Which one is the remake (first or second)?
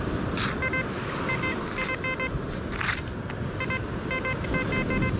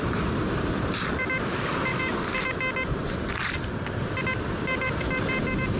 second